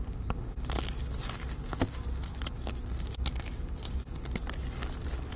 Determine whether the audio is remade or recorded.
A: recorded